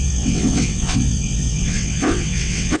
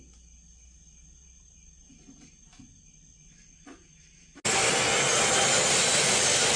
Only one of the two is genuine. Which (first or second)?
second